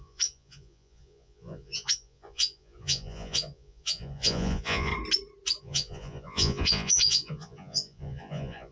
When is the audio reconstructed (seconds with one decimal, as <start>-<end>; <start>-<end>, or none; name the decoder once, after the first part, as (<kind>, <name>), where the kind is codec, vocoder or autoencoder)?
0.0-4.9 (vocoder, Vocos); 5.6-8.7